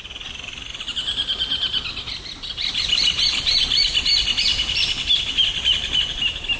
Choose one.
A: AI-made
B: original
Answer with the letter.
B